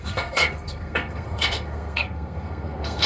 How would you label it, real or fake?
fake